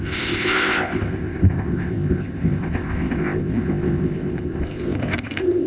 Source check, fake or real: fake